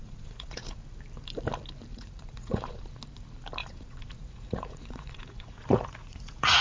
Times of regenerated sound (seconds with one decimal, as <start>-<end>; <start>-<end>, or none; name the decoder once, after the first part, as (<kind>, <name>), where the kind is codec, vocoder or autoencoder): 0.0-0.8 (vocoder, Vocos); 1.9-3.0; 3.6-6.6